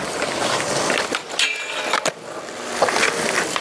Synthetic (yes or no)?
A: yes